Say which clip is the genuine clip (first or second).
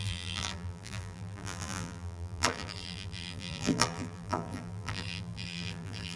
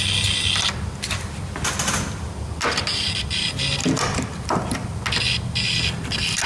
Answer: second